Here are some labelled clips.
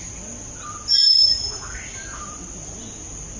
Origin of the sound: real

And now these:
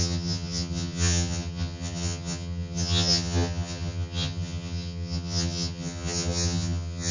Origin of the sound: fake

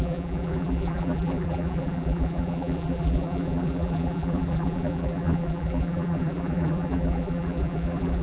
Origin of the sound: fake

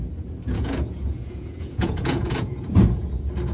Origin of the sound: fake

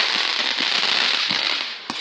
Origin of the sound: real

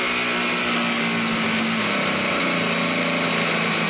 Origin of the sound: real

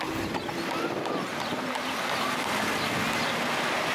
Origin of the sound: real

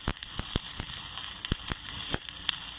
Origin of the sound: real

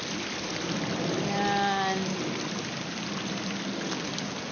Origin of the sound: real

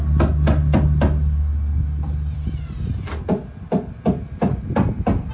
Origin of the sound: real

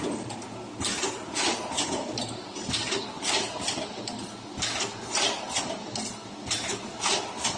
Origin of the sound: real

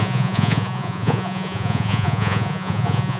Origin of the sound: fake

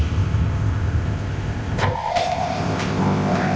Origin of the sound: fake